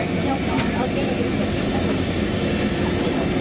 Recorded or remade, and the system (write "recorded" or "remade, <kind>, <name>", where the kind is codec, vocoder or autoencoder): recorded